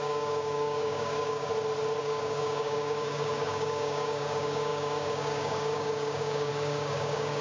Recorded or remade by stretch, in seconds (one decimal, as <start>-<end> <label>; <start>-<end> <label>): 0.0-1.5 remade; 1.5-2.0 recorded; 2.0-7.4 remade